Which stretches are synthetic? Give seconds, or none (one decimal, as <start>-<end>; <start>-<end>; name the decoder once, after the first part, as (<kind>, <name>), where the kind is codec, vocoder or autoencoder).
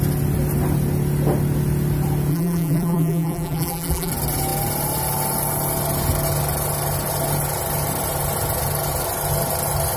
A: 2.3-4.1 (vocoder, BigVGAN v2)